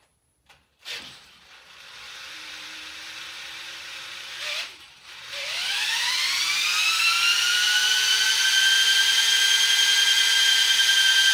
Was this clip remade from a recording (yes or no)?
yes